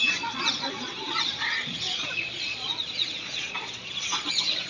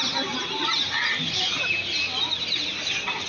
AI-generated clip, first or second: first